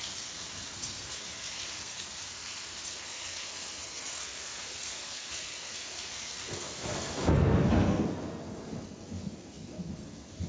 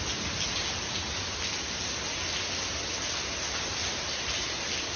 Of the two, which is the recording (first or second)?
second